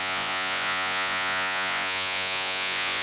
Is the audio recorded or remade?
remade